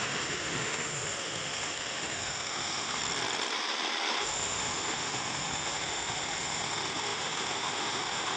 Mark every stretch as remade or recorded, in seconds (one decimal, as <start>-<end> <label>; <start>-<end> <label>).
0.0-3.0 remade; 3.0-4.2 recorded; 4.2-8.4 remade